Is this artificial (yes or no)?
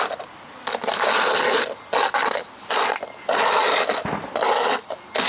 no